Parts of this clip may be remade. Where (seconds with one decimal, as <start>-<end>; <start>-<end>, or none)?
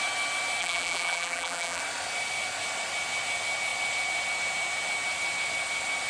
0.6-1.8